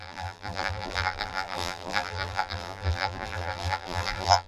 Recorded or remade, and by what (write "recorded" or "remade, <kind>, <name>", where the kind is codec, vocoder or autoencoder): remade, vocoder, BigVGAN v2